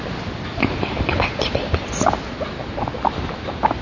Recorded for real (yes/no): yes